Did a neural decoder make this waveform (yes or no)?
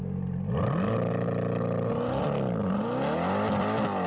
no